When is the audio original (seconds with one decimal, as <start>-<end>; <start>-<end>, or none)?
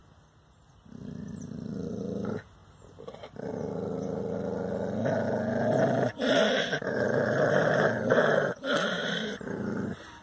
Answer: 0.0-1.9; 2.6-6.7